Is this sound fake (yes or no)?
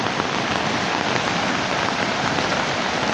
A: yes